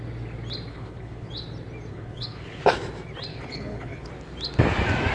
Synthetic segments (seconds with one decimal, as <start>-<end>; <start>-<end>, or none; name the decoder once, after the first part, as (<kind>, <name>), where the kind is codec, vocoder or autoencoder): 0.7-1.3 (codec, HILCodec); 1.9-2.6; 3.3-4.1